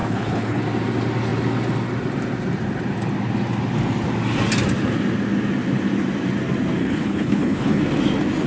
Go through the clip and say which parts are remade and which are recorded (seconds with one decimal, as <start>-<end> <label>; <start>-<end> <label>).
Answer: 0.0-0.6 remade; 0.6-6.8 recorded; 6.8-7.8 remade; 7.8-8.5 recorded

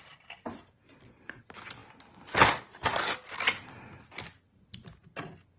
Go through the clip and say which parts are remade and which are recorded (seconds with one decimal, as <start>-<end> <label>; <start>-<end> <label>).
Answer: 0.0-5.6 recorded